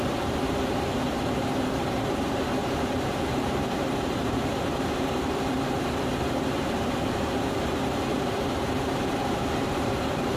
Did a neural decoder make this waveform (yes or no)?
yes